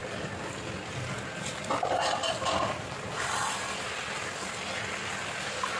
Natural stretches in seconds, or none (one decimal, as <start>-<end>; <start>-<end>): 0.0-5.8

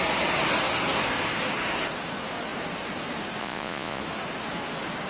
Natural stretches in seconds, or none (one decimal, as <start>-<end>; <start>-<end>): 0.0-3.4; 4.0-5.1

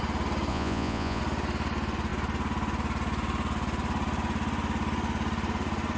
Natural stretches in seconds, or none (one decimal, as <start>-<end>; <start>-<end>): 0.0-0.5; 1.2-6.0